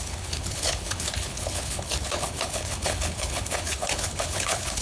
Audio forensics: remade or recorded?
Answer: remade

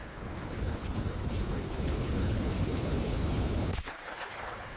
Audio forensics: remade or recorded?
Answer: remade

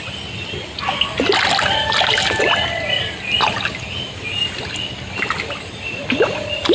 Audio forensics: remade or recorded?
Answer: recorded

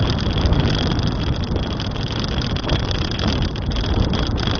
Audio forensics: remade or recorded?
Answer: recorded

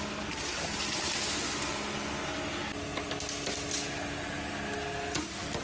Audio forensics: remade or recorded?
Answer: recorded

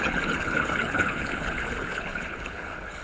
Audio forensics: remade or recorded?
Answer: remade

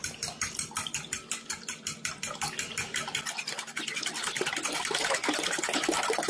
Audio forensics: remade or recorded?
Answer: recorded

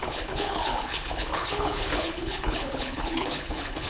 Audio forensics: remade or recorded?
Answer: remade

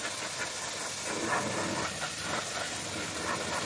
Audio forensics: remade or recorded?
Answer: recorded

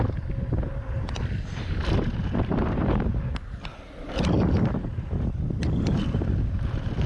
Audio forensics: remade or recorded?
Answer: recorded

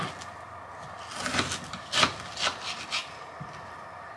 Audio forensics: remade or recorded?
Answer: recorded